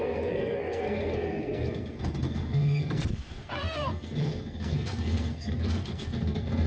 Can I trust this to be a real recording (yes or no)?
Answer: no